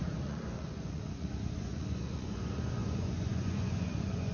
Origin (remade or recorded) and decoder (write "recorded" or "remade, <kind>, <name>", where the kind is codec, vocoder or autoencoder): remade, vocoder, Vocos